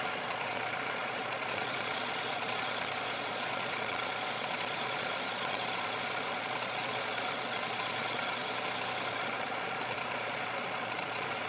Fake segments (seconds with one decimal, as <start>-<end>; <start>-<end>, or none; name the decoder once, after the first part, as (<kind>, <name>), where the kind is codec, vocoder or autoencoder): 0.0-8.4 (vocoder, Vocos); 9.1-11.5